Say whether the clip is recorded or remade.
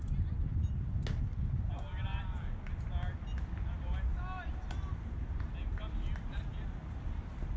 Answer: recorded